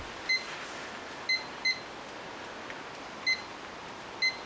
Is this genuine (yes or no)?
yes